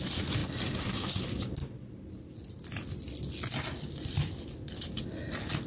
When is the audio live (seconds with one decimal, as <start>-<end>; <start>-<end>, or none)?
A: 0.0-1.6; 5.0-5.7